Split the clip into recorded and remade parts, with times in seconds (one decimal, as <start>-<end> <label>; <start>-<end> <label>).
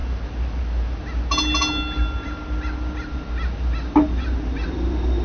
0.0-5.2 recorded